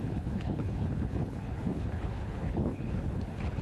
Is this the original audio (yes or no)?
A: no